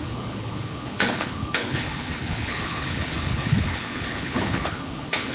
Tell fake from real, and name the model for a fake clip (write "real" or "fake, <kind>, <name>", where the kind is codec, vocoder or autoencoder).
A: fake, codec, HILCodec